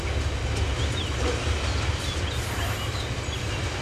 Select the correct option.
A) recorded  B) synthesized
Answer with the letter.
A